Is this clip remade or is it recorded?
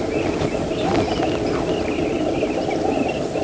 recorded